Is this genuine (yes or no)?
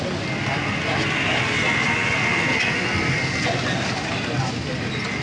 yes